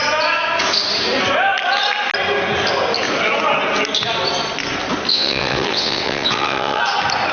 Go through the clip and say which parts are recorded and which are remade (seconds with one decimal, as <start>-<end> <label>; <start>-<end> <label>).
0.0-5.1 recorded; 5.1-6.8 remade; 6.8-7.3 recorded